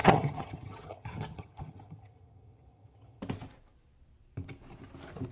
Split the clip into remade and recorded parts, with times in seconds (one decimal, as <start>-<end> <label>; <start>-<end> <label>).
0.0-3.2 remade; 3.2-5.3 recorded